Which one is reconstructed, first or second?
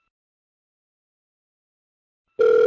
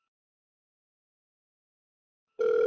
second